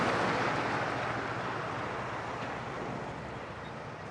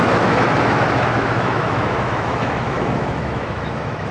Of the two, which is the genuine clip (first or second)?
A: first